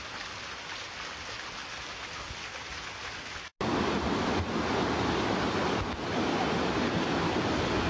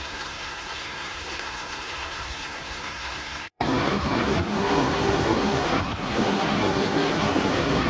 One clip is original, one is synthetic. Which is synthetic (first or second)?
second